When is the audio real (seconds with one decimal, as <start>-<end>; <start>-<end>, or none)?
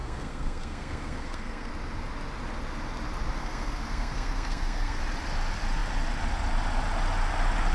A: 1.7-3.4; 5.0-7.7